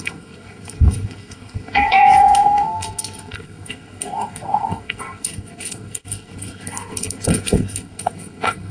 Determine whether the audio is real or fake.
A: fake